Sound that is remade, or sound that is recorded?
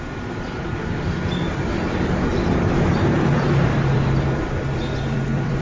remade